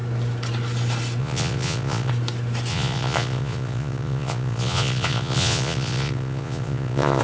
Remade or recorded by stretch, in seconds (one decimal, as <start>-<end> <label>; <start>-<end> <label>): 0.0-1.2 recorded; 1.2-2.1 remade; 2.1-2.7 recorded; 2.7-7.2 remade